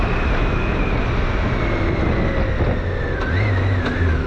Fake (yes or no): no